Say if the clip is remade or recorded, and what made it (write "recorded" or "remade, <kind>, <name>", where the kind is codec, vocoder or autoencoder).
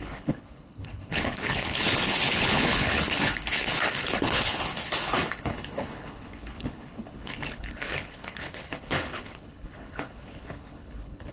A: remade, codec, HILCodec